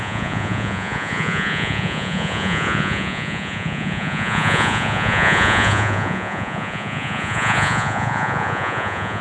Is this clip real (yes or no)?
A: no